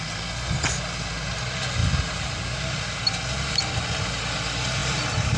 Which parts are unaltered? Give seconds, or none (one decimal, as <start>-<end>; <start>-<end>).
0.0-5.4